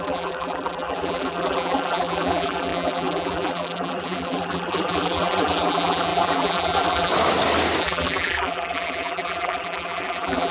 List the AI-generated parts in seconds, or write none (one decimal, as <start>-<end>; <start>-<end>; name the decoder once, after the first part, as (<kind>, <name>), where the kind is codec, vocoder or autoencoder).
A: 0.0-7.1 (vocoder, BigVGAN v2); 7.8-10.5